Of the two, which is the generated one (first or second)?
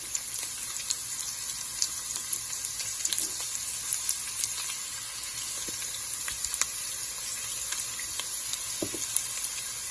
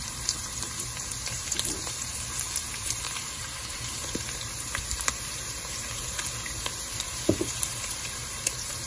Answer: second